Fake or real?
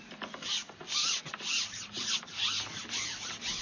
real